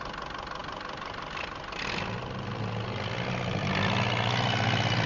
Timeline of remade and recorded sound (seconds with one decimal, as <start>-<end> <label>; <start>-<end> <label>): 0.0-5.1 recorded